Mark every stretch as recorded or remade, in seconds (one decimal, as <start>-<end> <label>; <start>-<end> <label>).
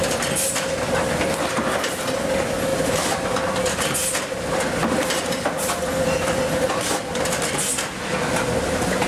0.0-9.1 recorded